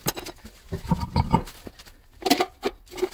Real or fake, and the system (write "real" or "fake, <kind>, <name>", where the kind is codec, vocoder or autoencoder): real